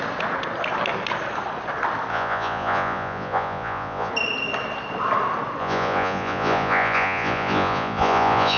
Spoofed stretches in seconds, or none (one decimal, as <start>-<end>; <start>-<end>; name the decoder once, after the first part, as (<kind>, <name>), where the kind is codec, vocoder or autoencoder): 2.1-4.1 (vocoder, Vocos); 5.6-8.6